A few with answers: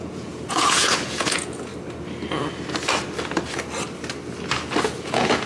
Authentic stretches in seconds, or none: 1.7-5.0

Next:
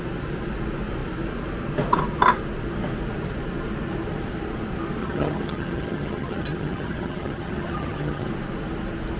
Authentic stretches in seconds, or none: 0.0-5.0; 8.3-9.2

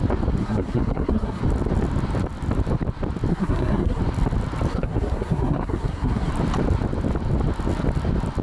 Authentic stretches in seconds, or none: 0.0-0.4; 1.4-3.3; 4.0-4.7; 6.3-8.4

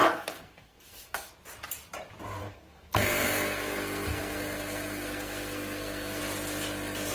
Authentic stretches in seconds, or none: 1.3-2.4; 6.2-7.1